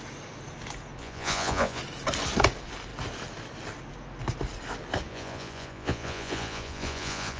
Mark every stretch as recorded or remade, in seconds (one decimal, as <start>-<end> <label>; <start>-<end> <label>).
0.0-1.0 recorded; 1.0-1.8 remade; 1.8-5.1 recorded; 5.1-7.4 remade